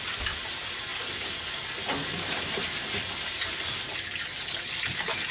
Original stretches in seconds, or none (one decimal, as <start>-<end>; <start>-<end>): 0.0-5.3